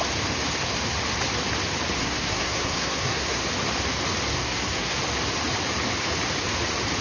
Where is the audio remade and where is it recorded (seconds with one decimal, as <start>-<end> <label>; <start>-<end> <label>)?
0.0-2.0 recorded; 2.0-3.4 remade; 3.4-4.3 recorded; 4.3-5.0 remade; 5.0-7.0 recorded